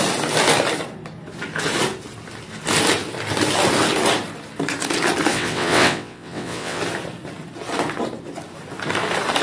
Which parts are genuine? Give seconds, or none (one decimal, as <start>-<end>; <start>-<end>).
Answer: 0.0-5.3; 6.8-9.4